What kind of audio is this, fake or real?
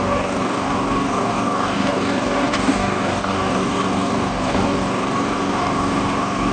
fake